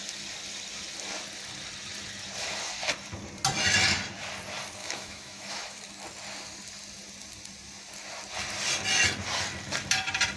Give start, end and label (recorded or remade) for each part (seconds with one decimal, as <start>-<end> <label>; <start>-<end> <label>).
0.0-4.8 recorded; 4.8-5.8 remade; 5.8-10.4 recorded